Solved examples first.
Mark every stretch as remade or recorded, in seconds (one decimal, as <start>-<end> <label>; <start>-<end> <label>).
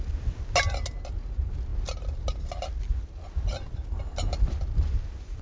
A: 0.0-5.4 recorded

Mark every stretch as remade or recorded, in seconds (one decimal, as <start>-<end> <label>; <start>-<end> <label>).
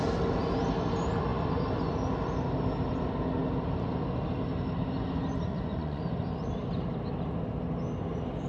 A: 0.0-5.5 recorded; 5.5-6.0 remade; 6.0-8.5 recorded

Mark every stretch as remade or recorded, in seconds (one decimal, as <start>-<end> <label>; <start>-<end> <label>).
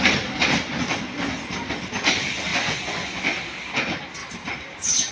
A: 0.0-2.5 recorded; 2.5-3.2 remade; 3.2-5.1 recorded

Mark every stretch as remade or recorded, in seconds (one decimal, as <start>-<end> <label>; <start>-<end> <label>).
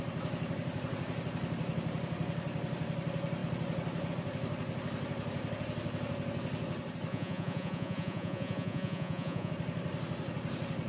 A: 0.0-7.1 recorded; 7.1-9.5 remade; 9.5-10.9 recorded